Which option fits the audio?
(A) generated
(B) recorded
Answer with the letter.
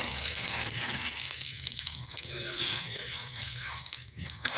A